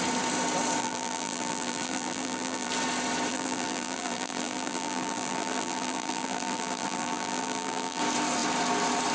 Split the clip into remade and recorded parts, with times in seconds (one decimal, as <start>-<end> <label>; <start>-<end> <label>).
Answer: 0.0-0.8 recorded; 0.8-2.7 remade; 2.7-3.3 recorded; 3.3-8.0 remade; 8.0-9.1 recorded